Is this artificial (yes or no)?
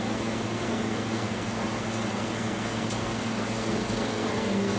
yes